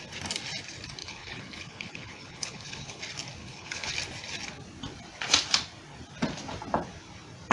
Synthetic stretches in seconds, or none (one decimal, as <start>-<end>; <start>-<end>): 1.0-3.0; 3.4-3.9